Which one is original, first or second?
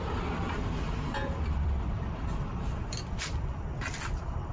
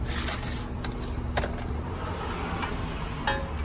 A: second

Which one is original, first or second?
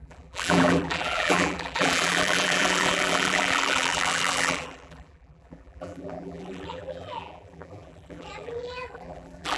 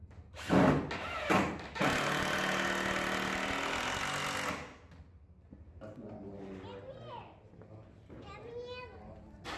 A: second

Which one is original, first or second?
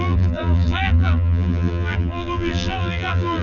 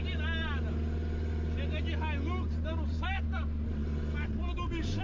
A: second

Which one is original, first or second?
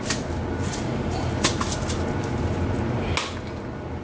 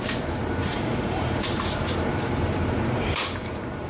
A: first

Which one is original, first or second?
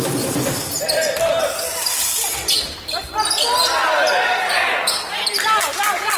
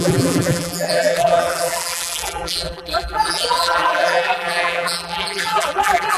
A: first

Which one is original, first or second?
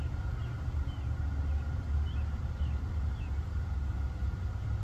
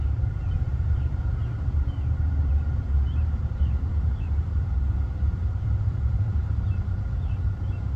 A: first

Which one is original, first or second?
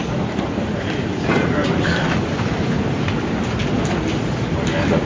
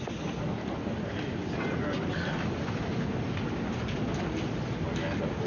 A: second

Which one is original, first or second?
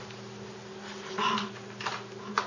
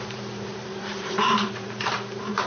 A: first